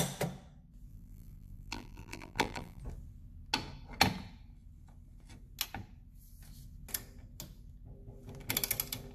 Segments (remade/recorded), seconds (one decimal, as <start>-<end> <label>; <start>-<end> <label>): 0.0-0.9 recorded; 0.9-2.8 remade; 2.8-9.1 recorded